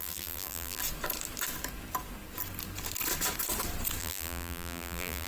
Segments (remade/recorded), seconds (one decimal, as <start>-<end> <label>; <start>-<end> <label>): 0.0-0.8 remade; 0.8-4.0 recorded; 4.0-5.3 remade